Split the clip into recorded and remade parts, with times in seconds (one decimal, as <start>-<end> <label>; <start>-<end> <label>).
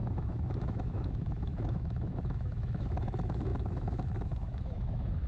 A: 0.0-5.3 remade